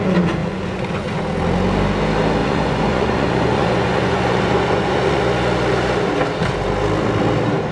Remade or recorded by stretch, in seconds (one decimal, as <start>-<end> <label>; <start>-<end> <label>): 0.0-0.4 recorded; 0.4-1.2 remade; 1.2-2.4 recorded; 2.4-5.2 remade; 5.2-7.7 recorded